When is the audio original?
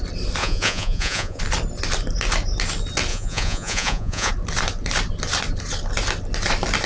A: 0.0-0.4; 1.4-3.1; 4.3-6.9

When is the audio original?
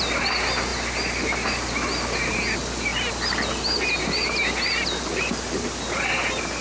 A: 0.0-6.6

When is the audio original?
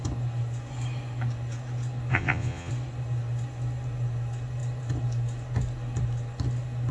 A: 0.0-2.1; 2.7-6.9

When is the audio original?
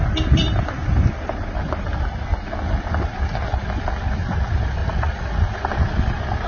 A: 0.0-4.8; 5.4-6.5